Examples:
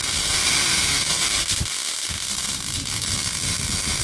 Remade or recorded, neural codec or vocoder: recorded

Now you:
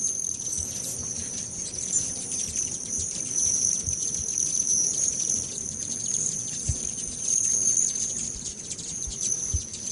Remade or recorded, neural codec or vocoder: remade, vocoder, BigVGAN v2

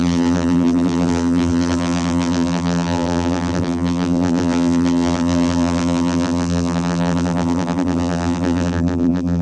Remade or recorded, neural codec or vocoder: remade, vocoder, BigVGAN v2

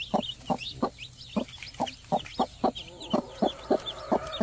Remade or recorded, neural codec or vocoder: recorded